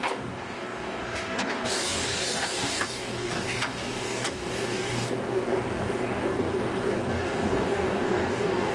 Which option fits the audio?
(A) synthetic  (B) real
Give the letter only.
A